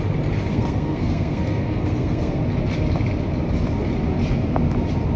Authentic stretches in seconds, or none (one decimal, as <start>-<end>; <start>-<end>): 0.0-0.5; 2.4-5.2